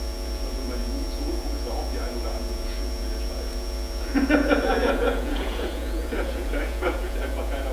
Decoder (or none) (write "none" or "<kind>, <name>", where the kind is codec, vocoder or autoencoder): vocoder, Vocos